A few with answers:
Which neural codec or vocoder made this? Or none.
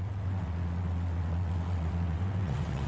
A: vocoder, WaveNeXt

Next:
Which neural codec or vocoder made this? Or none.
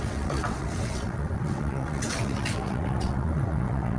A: vocoder, WaveNeXt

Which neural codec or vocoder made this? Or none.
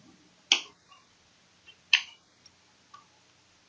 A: none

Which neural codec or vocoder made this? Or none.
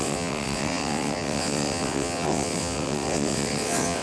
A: vocoder, WaveNeXt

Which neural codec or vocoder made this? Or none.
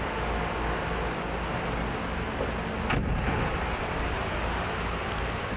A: none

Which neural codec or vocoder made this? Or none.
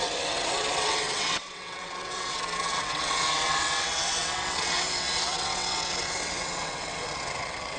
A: vocoder, WaveNeXt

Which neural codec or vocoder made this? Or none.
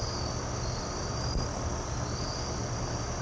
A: none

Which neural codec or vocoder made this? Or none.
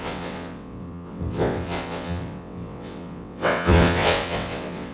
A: vocoder, WaveNeXt